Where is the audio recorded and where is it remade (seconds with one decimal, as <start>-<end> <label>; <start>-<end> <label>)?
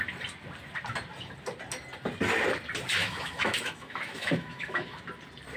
0.0-3.0 recorded; 3.0-5.0 remade; 5.0-5.6 recorded